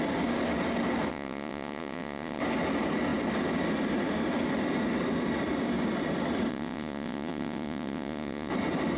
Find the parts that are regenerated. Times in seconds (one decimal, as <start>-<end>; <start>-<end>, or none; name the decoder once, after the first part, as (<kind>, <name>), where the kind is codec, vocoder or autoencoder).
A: 1.1-2.4 (vocoder, WaveNeXt); 6.5-8.5